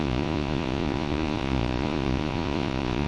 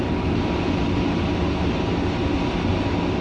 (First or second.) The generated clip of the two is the first